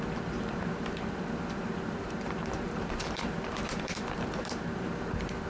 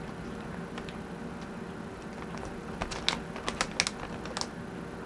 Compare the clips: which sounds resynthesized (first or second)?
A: first